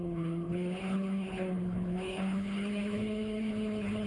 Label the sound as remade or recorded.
remade